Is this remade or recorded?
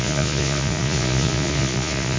remade